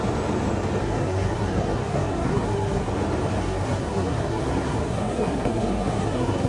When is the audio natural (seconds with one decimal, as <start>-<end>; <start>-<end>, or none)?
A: 0.0-0.8; 2.9-3.4